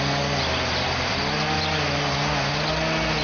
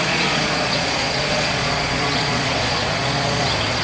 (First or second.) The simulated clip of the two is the second